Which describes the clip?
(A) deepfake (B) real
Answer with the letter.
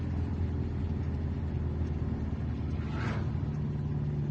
B